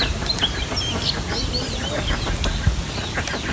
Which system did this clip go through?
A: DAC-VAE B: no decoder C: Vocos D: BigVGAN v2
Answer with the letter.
B